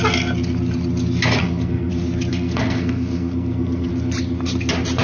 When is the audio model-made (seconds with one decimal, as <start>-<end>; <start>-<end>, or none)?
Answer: 1.4-1.9; 2.3-3.9